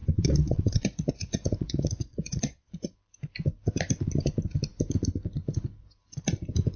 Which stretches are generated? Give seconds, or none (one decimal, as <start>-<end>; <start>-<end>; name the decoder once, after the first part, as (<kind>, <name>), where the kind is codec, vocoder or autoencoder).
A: 0.0-2.7 (vocoder, Vocos)